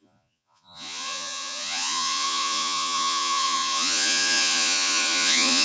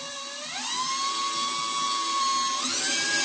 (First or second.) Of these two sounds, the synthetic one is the first